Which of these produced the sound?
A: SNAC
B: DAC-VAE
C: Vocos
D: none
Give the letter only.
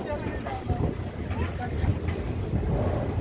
D